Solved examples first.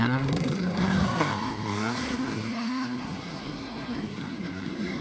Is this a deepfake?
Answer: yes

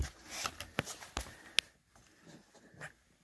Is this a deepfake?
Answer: no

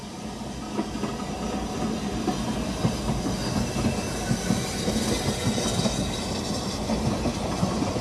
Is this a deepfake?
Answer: no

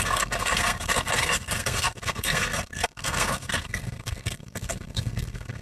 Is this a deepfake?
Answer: yes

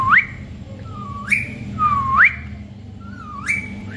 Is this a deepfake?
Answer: no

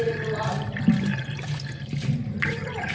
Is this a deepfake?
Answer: no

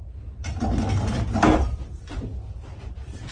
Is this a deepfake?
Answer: no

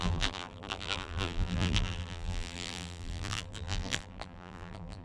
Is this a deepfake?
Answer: yes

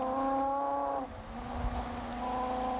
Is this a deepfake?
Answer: no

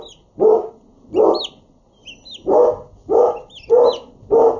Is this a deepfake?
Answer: no